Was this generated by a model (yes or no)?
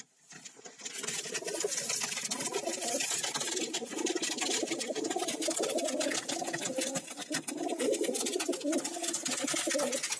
no